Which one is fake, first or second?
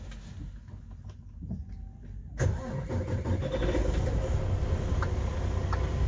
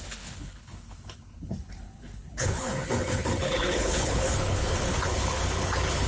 second